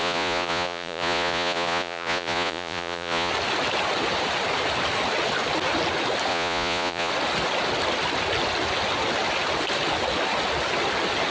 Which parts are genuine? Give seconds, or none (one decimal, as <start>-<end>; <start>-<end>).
3.3-6.3; 7.1-11.3

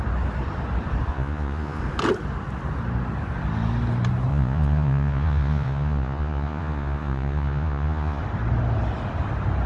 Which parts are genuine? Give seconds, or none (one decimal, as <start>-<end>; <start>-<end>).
0.0-1.1; 1.8-4.3; 8.2-9.7

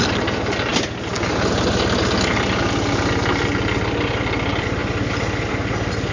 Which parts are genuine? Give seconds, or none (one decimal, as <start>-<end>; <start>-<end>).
0.0-6.1

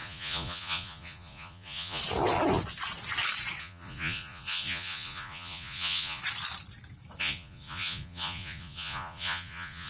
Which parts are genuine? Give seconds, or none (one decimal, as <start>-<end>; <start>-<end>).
2.0-3.6; 6.2-7.2

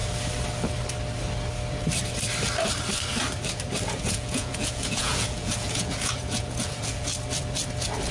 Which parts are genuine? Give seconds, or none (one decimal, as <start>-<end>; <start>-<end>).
0.0-4.0; 7.1-8.1

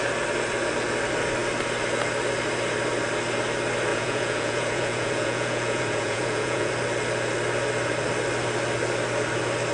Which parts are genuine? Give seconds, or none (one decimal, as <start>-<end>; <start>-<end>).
0.0-3.9; 6.7-9.7